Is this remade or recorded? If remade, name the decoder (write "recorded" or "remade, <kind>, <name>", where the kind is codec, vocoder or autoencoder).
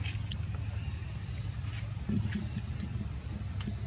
recorded